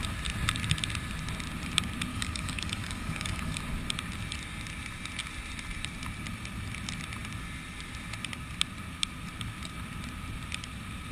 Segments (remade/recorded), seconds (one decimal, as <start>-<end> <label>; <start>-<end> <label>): 0.0-2.1 recorded; 2.1-3.6 remade; 3.6-11.1 recorded